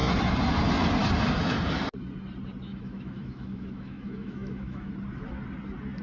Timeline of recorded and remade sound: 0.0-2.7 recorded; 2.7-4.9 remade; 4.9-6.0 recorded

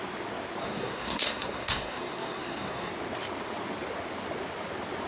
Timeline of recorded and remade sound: 0.0-0.6 recorded; 0.6-2.9 remade; 2.9-5.1 recorded

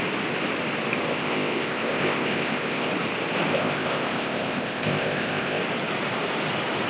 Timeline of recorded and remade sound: 0.0-1.1 recorded; 1.1-2.9 remade; 2.9-3.5 recorded; 3.5-5.6 remade; 5.6-6.9 recorded

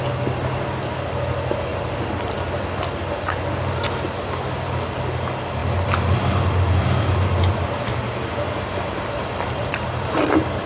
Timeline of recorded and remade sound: 0.0-10.7 recorded

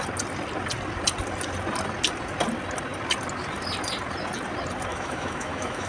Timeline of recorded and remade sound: 0.0-4.9 recorded; 4.9-5.9 remade

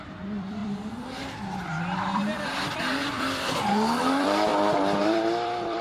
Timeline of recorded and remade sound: 0.0-4.5 remade; 4.5-5.0 recorded; 5.0-5.8 remade

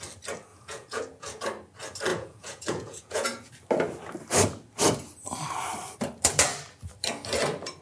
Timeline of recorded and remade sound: 0.0-0.5 recorded; 0.5-1.4 remade; 1.4-2.1 recorded; 2.1-3.5 remade; 3.5-7.8 recorded